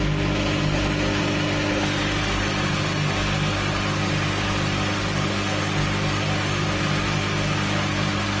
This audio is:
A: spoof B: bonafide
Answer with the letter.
B